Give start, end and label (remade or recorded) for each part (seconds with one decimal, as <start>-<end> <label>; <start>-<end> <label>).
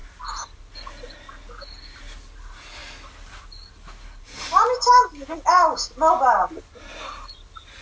0.0-7.8 recorded